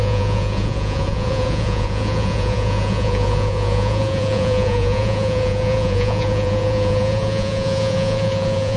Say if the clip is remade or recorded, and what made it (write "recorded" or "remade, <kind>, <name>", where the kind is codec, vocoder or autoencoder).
remade, vocoder, Vocos